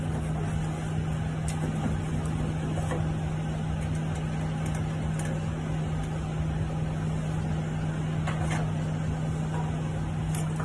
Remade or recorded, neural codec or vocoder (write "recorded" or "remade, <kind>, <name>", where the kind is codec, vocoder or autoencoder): recorded